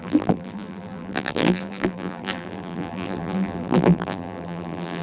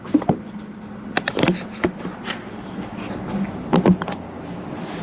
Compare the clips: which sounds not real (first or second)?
first